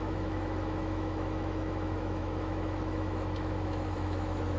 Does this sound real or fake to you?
fake